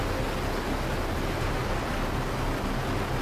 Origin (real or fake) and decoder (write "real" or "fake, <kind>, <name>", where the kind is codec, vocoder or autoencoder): real